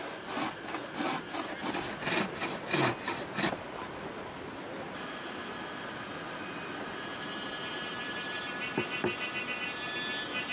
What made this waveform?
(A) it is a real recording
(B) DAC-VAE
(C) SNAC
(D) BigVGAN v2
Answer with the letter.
A